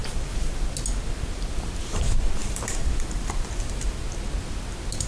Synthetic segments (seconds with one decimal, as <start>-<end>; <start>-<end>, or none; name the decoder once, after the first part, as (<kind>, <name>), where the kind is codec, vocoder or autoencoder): 0.0-0.7 (vocoder, BigVGAN v2); 2.4-3.9